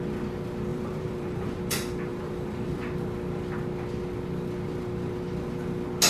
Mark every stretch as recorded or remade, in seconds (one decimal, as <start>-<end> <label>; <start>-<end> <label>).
0.0-0.7 recorded; 0.7-1.6 remade; 1.6-2.1 recorded; 2.1-2.8 remade; 2.8-6.1 recorded